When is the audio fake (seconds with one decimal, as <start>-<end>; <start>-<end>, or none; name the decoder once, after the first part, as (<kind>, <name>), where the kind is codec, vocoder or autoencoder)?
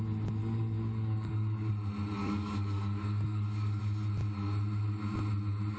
0.4-1.7 (codec, DAC); 2.2-3.8